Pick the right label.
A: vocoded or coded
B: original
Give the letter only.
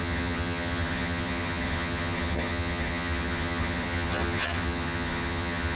A